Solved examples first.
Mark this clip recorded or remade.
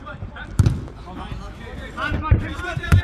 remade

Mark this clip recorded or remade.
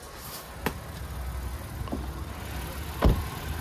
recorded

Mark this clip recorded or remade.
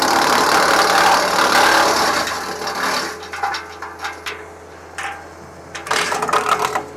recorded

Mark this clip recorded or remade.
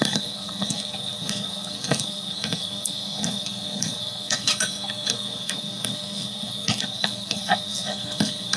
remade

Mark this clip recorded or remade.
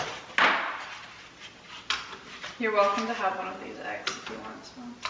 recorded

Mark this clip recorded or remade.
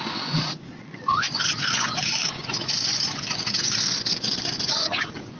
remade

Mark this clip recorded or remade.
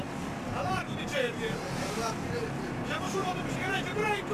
recorded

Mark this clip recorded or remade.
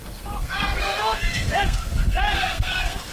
remade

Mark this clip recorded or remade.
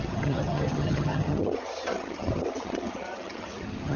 remade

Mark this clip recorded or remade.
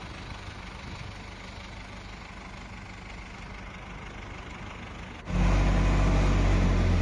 recorded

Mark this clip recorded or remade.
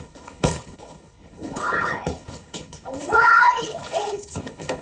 remade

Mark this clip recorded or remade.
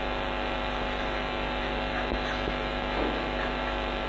remade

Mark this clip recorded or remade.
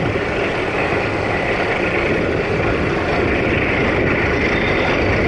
recorded